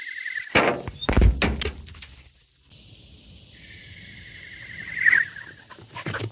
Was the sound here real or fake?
real